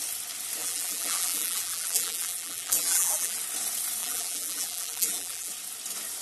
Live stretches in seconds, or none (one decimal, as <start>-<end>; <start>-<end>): 0.0-0.6; 3.4-4.0; 5.5-6.2